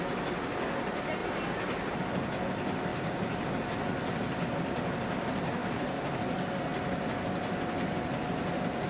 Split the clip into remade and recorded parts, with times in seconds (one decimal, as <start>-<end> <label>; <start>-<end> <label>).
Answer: 0.0-1.2 recorded; 1.2-2.0 remade; 2.0-2.9 recorded; 2.9-3.5 remade; 3.5-5.6 recorded; 5.6-6.1 remade; 6.1-8.9 recorded